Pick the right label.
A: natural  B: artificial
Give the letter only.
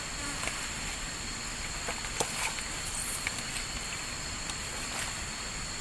A